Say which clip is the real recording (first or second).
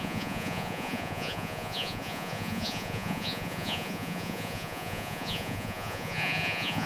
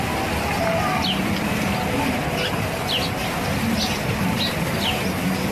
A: second